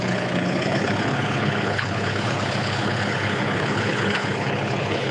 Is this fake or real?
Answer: fake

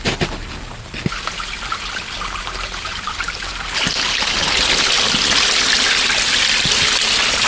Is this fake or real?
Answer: real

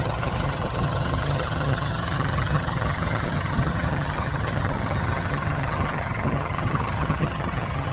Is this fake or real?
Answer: fake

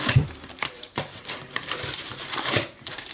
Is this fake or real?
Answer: fake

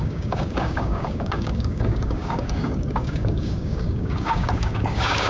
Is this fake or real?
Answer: fake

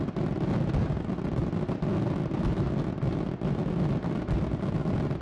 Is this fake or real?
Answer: real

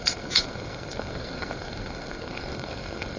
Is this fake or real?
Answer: fake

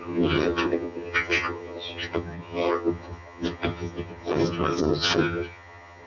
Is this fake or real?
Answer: fake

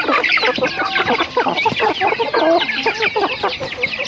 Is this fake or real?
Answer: real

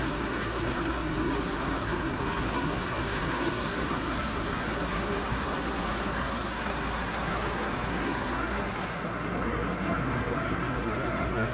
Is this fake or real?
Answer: fake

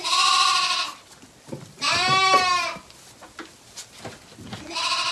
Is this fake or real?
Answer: real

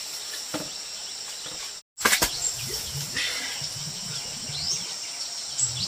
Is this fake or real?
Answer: real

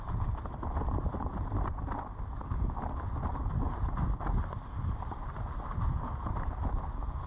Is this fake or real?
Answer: real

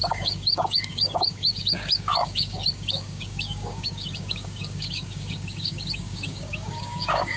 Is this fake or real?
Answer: fake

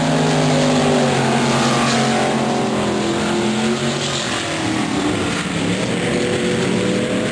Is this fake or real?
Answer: real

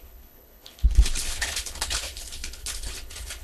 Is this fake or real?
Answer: fake